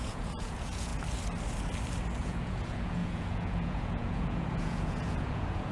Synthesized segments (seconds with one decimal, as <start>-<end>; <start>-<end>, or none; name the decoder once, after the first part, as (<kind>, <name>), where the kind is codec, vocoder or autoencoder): 0.0-0.9 (vocoder, Vocos); 2.2-5.7

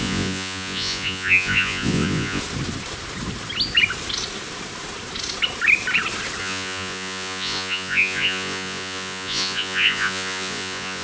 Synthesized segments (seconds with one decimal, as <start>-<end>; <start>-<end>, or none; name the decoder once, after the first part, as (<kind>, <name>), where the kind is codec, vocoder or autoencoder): 0.0-2.4 (vocoder, Vocos); 6.4-11.0

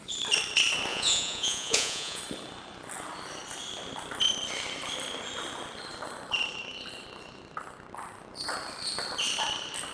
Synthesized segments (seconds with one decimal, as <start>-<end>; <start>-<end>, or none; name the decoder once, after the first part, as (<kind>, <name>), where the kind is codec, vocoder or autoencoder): 0.9-2.2 (vocoder, Vocos)